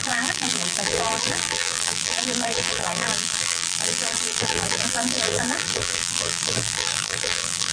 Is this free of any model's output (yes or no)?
no